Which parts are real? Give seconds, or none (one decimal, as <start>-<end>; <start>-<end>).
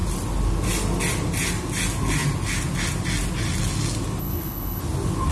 0.0-4.2; 4.8-5.3